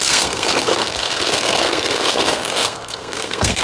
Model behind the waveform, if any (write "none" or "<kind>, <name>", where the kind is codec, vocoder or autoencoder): codec, SNAC